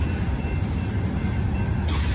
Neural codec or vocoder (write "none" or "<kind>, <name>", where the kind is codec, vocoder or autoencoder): none